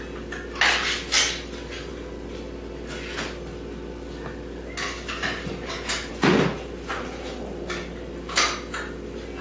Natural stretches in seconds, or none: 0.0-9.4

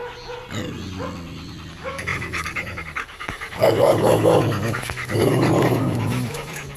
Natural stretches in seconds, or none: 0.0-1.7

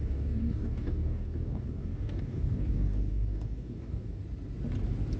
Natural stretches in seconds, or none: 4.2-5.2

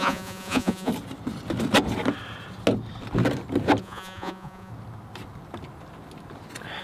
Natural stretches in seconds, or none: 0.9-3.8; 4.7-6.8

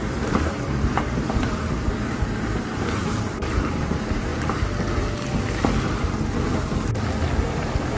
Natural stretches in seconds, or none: 4.3-8.0

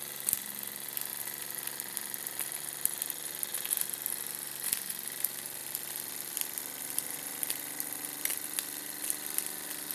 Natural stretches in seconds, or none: 0.0-1.1; 3.5-5.6; 7.6-9.9

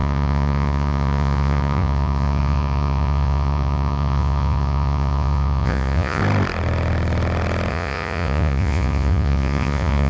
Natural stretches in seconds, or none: 6.2-7.7